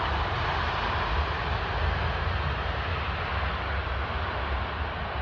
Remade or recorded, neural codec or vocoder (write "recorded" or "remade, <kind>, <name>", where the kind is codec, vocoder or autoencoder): recorded